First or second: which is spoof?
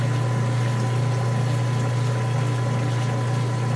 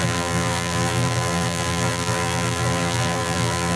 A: second